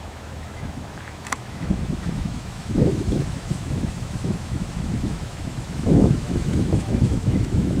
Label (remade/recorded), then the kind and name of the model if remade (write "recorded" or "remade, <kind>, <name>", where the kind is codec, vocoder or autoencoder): remade, autoencoder, DAC-VAE